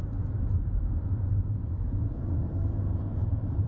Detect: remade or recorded remade